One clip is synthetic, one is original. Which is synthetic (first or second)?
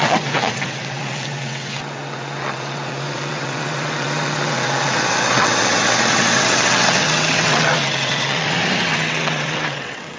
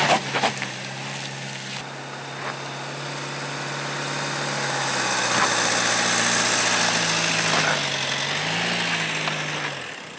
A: first